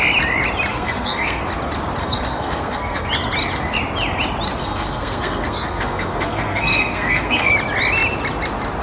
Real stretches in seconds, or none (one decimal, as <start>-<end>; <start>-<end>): 0.0-0.7; 1.4-2.0; 3.1-4.6; 7.5-8.8